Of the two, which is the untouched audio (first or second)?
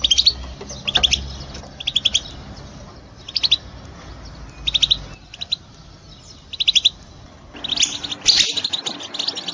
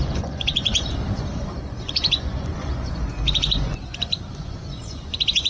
first